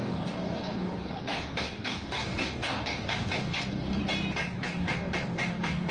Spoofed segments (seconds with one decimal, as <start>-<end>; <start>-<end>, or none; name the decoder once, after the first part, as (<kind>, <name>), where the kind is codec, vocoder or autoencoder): 0.0-4.0 (codec, DAC); 4.6-5.9